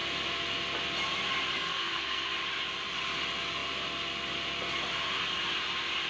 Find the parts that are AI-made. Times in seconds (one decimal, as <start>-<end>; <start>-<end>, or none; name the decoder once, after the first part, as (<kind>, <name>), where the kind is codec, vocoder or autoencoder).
1.5-2.3 (codec, SNAC)

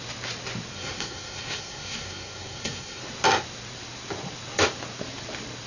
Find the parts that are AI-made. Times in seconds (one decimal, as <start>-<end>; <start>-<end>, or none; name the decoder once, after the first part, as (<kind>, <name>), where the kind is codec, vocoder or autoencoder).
0.7-3.0 (codec, SNAC)